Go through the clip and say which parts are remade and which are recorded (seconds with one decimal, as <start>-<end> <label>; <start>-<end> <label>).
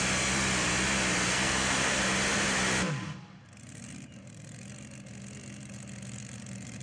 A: 0.0-1.2 recorded; 1.2-2.0 remade; 2.0-6.8 recorded